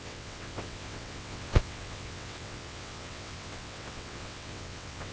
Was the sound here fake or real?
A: fake